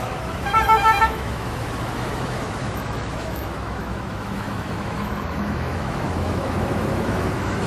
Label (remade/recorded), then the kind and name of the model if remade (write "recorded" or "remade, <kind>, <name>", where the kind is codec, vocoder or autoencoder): remade, autoencoder, DAC-VAE